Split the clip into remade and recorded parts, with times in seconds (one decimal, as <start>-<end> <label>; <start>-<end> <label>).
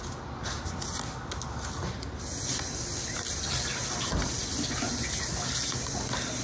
0.0-6.4 recorded